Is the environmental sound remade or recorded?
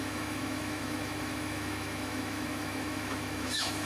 remade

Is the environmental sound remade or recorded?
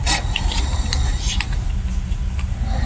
recorded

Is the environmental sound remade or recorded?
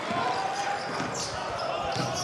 recorded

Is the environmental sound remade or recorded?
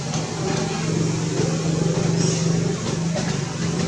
recorded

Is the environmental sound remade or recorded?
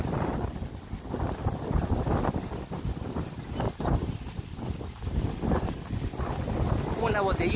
recorded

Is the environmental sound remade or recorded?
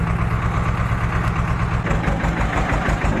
recorded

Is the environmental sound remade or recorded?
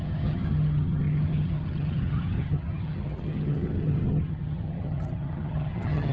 remade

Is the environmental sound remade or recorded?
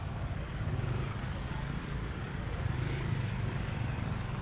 remade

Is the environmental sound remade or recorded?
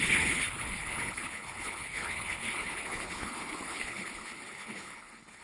remade